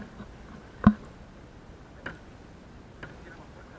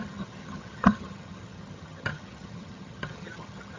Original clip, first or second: first